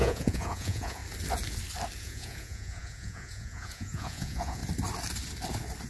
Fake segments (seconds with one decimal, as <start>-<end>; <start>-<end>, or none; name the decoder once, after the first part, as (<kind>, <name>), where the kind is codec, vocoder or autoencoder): 0.0-1.0 (vocoder, Vocos); 2.0-4.6